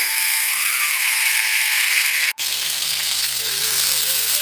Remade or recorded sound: remade